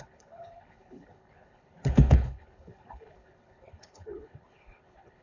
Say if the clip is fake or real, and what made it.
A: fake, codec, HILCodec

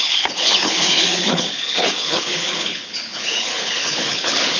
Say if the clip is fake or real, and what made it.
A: fake, codec, HILCodec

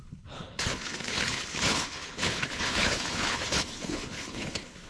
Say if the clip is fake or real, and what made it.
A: fake, codec, HILCodec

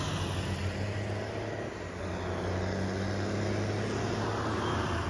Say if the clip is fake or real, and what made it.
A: real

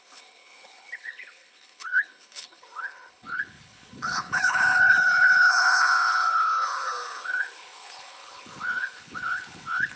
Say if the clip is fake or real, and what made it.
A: fake, codec, HILCodec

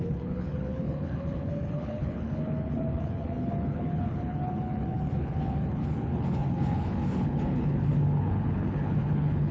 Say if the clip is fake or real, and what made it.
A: fake, codec, HILCodec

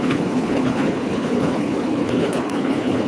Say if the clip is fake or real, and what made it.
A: fake, codec, HILCodec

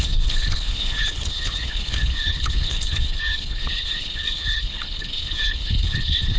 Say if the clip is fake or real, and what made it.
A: fake, codec, HILCodec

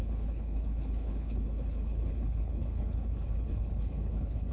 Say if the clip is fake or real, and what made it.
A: fake, codec, HILCodec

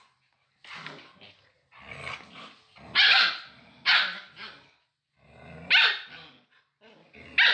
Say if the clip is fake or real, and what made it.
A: real